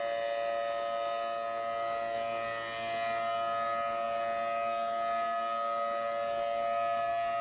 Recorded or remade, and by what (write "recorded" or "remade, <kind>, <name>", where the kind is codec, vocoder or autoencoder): recorded